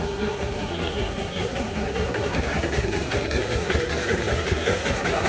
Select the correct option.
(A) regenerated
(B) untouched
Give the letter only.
A